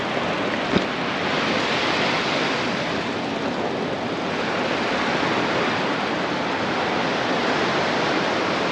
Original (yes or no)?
yes